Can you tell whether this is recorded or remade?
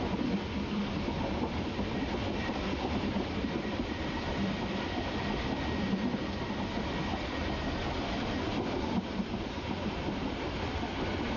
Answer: recorded